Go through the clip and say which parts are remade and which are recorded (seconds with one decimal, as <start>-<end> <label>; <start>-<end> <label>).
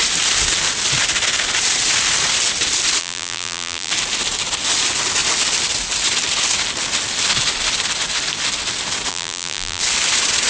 0.0-3.0 recorded; 3.0-3.9 remade; 3.9-9.1 recorded; 9.1-9.8 remade; 9.8-10.5 recorded